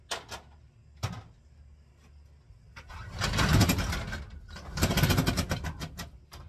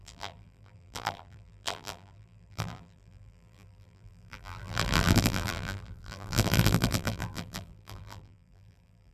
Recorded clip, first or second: first